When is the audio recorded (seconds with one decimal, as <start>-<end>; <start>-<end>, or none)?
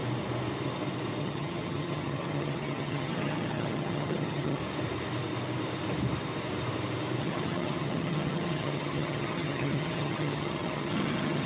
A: 0.0-1.2; 4.6-7.2